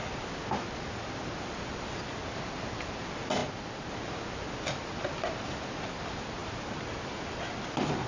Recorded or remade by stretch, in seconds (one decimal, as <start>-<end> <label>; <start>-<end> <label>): 0.0-8.1 recorded